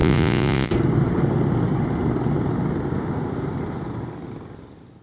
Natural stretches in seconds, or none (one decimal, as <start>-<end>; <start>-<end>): 0.7-5.0